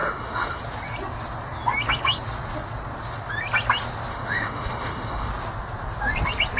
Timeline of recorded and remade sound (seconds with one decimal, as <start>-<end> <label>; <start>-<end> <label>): 0.0-0.6 remade; 0.6-4.1 recorded; 4.1-5.3 remade; 5.3-6.6 recorded